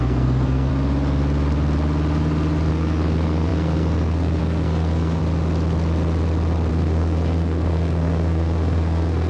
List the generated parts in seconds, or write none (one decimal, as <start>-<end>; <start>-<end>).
0.0-0.7; 2.7-5.2; 6.7-9.3